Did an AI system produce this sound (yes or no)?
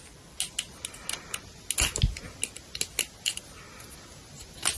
no